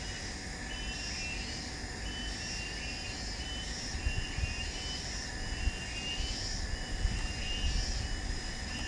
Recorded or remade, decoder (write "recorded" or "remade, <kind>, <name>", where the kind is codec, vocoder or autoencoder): recorded